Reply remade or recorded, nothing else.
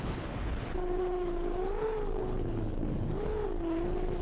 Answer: remade